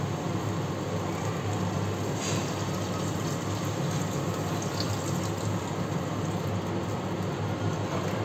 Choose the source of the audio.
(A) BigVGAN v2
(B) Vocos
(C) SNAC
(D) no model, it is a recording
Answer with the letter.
D